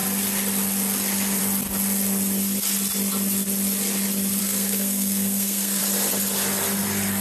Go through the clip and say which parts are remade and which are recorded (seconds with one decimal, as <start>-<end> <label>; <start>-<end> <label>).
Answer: 0.0-4.4 recorded; 4.4-5.8 remade; 5.8-7.2 recorded